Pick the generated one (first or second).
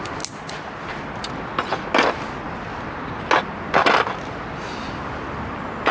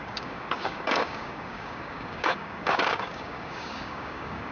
second